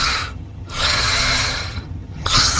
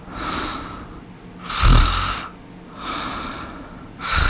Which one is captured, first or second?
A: second